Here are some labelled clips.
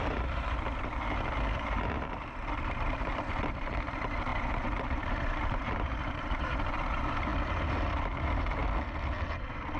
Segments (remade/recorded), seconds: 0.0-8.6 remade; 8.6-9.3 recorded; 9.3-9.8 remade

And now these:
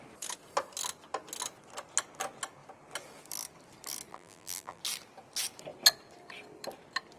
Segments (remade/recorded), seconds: 0.0-4.1 recorded; 4.1-4.8 remade; 4.8-7.2 recorded

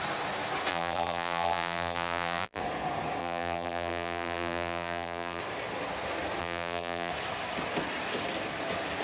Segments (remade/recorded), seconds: 0.0-0.7 recorded; 0.7-2.6 remade; 2.6-3.2 recorded; 3.2-5.4 remade; 5.4-6.4 recorded; 6.4-7.1 remade; 7.1-9.0 recorded

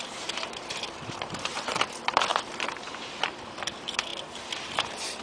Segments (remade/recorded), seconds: 0.0-5.2 remade

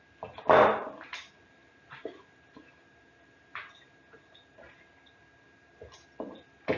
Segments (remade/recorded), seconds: 0.0-0.8 recorded; 0.8-4.7 remade; 4.7-6.8 recorded

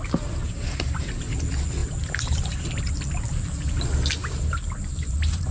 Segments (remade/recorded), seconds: 0.0-0.4 recorded; 0.4-1.0 remade; 1.0-1.8 recorded; 1.8-2.9 remade; 2.9-4.2 recorded; 4.2-5.5 remade